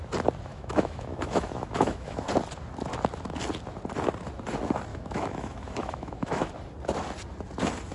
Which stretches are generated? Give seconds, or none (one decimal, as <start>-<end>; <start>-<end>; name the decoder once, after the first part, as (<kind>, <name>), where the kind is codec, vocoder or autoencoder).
0.5-2.3 (autoencoder, DAC-VAE); 4.9-6.5